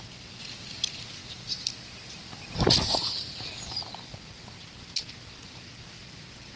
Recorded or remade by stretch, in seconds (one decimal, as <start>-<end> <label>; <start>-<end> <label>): 0.0-6.6 recorded